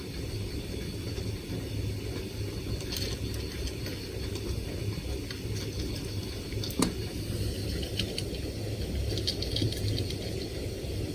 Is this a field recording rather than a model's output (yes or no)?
yes